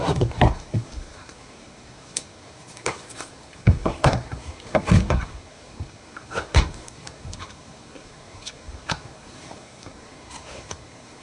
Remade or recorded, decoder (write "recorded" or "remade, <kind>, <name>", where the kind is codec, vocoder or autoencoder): remade, codec, SNAC